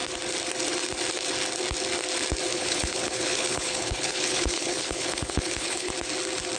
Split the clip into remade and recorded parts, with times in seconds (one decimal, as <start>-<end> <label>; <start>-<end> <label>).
0.0-2.5 recorded; 2.5-5.9 remade; 5.9-6.6 recorded